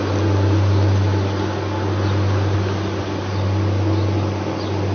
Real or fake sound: real